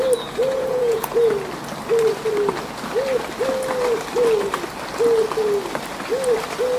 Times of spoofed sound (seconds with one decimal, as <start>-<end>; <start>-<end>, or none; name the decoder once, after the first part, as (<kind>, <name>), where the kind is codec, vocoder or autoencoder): 0.4-1.3 (vocoder, Vocos)